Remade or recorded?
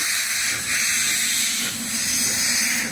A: recorded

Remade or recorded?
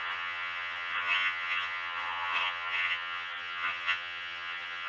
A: remade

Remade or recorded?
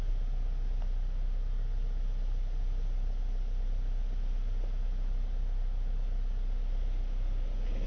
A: recorded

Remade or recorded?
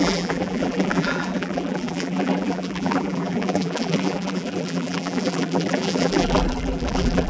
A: remade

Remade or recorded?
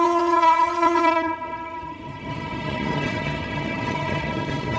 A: remade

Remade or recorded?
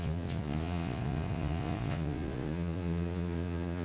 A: remade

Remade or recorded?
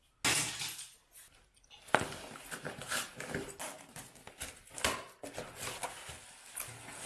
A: recorded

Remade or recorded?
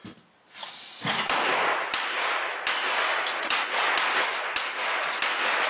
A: recorded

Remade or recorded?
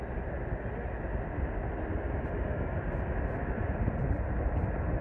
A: recorded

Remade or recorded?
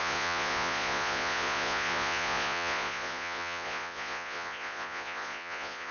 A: remade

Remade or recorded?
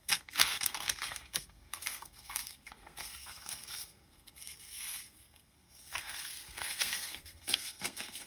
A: remade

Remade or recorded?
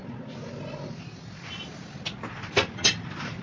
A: recorded